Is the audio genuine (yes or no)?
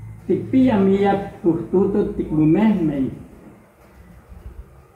yes